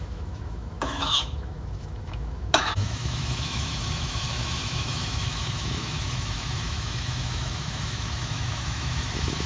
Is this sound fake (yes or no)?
yes